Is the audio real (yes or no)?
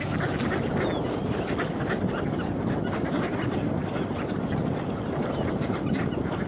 yes